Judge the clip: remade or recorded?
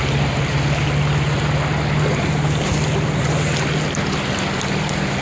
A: recorded